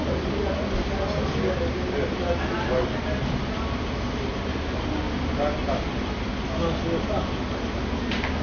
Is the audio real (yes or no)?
yes